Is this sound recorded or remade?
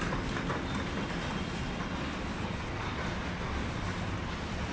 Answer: recorded